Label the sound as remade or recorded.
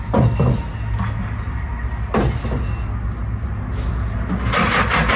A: recorded